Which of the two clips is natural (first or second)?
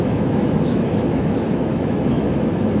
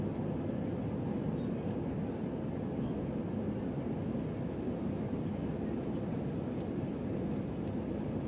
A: second